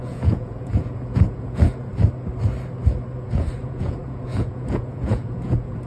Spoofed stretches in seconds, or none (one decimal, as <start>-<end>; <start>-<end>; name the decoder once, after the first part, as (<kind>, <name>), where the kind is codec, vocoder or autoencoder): 0.0-1.9 (vocoder, Vocos); 3.6-5.9

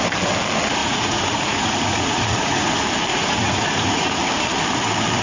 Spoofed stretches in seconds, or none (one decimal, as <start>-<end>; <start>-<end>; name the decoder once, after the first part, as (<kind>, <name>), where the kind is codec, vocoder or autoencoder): 0.8-2.7 (vocoder, Vocos); 3.1-4.3

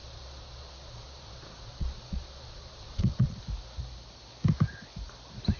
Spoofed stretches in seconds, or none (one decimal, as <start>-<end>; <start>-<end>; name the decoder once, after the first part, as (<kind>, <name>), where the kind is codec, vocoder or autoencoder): 0.0-3.4 (vocoder, Vocos)

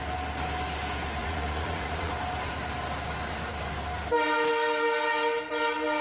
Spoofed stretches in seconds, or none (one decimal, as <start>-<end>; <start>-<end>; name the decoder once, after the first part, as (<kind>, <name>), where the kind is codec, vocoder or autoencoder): 1.2-2.1 (vocoder, Vocos)

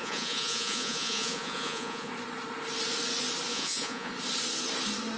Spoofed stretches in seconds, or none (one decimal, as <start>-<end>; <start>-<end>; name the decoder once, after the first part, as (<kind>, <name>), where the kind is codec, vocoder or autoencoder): 0.0-2.1 (vocoder, Vocos); 3.5-4.1